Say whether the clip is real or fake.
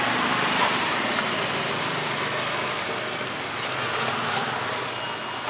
real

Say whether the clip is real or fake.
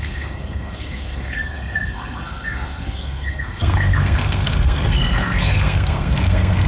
fake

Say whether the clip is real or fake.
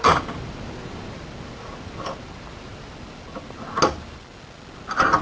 real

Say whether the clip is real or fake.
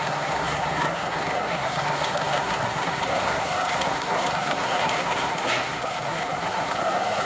fake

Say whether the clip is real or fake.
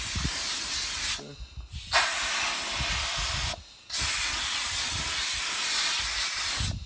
real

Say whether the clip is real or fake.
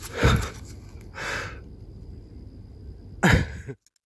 real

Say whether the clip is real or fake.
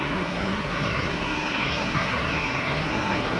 fake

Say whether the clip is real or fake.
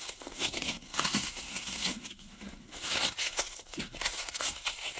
fake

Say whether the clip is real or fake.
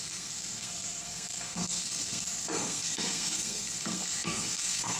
fake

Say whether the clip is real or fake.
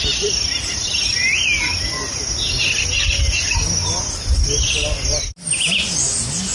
real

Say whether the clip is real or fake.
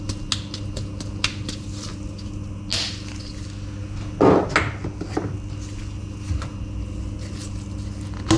real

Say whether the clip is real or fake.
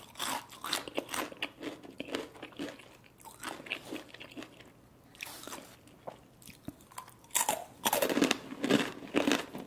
real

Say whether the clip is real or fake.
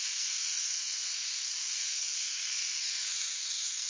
fake